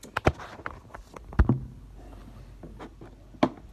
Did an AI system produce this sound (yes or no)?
no